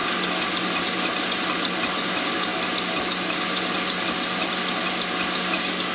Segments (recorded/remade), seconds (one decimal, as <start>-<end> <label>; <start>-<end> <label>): 0.0-5.9 recorded